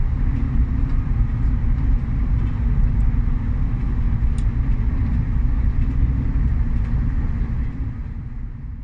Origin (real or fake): real